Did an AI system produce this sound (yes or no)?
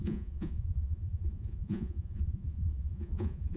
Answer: yes